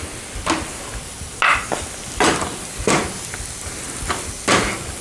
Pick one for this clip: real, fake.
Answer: real